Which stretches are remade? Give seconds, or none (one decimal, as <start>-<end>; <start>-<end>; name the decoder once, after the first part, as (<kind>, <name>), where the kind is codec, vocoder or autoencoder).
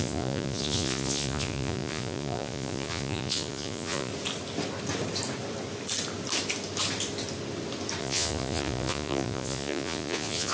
0.0-4.1 (vocoder, Vocos); 8.0-10.5